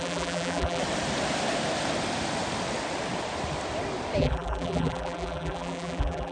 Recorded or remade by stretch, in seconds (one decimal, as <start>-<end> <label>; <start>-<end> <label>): 0.0-0.8 remade; 0.8-4.2 recorded; 4.2-6.3 remade

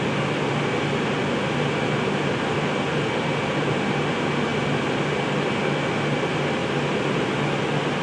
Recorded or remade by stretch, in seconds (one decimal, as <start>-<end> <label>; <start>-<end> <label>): 0.0-6.6 recorded; 6.6-7.3 remade; 7.3-8.0 recorded

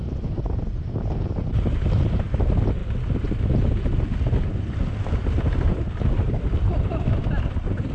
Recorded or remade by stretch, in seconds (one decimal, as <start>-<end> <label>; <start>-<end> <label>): 0.0-2.8 remade; 2.8-4.9 recorded; 4.9-7.9 remade

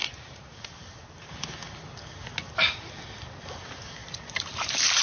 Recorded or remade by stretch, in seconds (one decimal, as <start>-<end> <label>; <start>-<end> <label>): 0.0-1.3 remade; 1.3-4.0 recorded; 4.0-5.0 remade

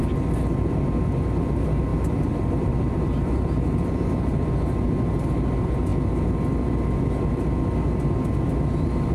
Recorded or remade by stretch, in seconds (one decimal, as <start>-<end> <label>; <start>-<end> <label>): 0.0-1.9 recorded; 1.9-4.5 remade; 4.5-9.1 recorded